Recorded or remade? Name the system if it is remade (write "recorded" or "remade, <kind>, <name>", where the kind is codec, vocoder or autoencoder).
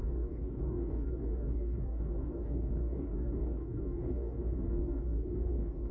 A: remade, codec, DAC